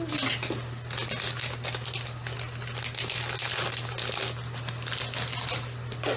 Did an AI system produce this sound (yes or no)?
no